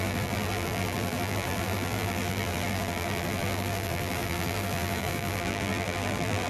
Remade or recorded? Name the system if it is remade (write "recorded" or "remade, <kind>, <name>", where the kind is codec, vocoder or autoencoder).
remade, vocoder, BigVGAN v2